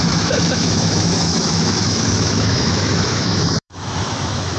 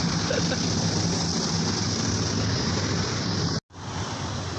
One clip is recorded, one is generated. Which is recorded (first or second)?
second